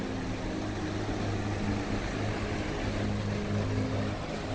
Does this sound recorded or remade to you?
recorded